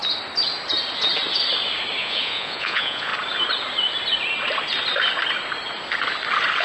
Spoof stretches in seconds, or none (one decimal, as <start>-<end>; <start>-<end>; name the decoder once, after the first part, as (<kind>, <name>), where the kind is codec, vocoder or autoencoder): 2.0-3.1 (vocoder, Vocos)